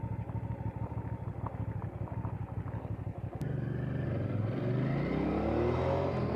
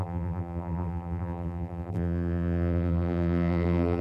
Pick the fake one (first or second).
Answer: second